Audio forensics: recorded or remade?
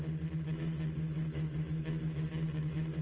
remade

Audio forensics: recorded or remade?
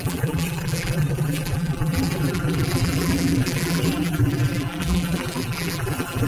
remade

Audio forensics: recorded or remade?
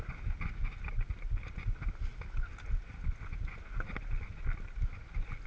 recorded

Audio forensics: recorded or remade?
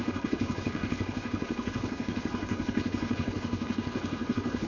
remade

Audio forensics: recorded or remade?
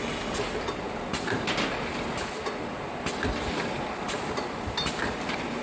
recorded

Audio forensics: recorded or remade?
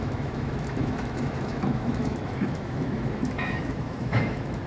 remade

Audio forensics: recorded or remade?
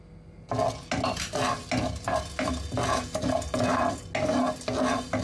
recorded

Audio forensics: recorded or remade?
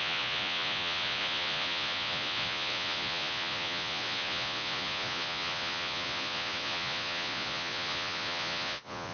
remade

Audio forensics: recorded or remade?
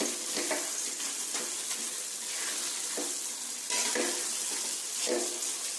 recorded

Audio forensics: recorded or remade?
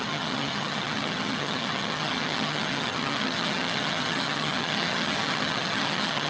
remade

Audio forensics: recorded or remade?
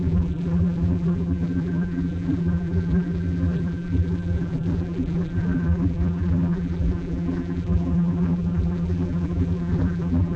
remade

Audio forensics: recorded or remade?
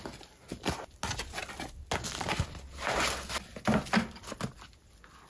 recorded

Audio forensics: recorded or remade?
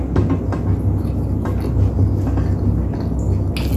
recorded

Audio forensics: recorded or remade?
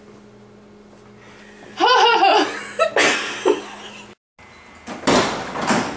recorded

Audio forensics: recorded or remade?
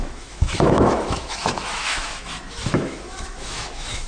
remade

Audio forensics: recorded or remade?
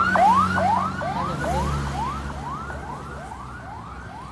recorded